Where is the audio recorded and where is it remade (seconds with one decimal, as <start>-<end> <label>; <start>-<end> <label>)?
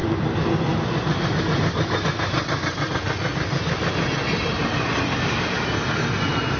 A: 0.0-6.6 recorded